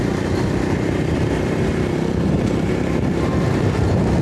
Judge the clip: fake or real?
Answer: fake